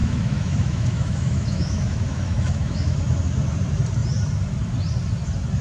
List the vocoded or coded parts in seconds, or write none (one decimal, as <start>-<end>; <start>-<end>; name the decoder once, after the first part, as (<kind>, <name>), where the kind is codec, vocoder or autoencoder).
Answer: 0.0-3.0 (autoencoder, DAC-VAE)